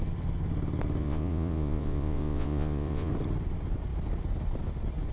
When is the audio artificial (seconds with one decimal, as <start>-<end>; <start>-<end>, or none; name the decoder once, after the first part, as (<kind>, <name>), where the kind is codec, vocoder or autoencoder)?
1.0-3.1 (vocoder, Vocos)